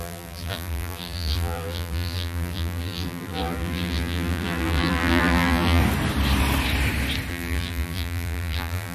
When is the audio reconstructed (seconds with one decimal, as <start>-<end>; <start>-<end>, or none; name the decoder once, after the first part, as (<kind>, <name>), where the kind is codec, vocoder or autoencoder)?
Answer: 0.0-5.8 (vocoder, BigVGAN v2); 7.3-8.9